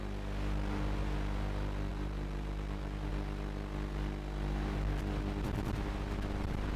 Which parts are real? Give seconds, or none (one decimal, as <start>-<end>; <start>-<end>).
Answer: 0.0-1.9; 3.1-6.8